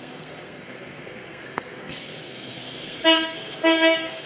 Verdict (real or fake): fake